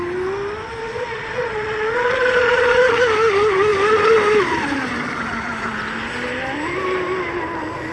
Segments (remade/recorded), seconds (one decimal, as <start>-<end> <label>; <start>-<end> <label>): 0.0-0.8 recorded; 0.8-3.0 remade; 3.0-7.9 recorded